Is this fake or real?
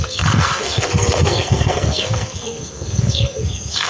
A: fake